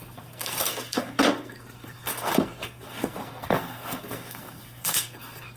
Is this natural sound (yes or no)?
no